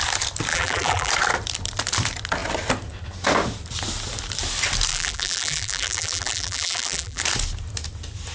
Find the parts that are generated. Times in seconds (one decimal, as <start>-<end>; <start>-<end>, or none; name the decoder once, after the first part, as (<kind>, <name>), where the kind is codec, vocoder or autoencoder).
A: 0.5-1.1 (vocoder, BigVGAN v2); 4.9-7.2